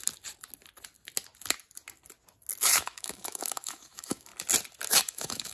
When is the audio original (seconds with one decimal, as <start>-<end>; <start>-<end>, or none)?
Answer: 0.0-2.6; 4.3-4.9